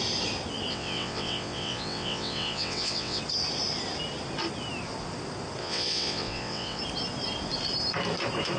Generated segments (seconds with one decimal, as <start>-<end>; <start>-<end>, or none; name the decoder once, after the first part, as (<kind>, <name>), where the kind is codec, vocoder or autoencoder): 0.7-3.2 (vocoder, WaveNeXt); 5.6-6.8